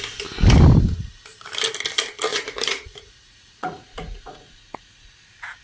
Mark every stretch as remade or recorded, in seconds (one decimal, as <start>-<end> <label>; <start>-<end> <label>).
0.0-2.3 recorded; 2.3-5.1 remade; 5.1-5.6 recorded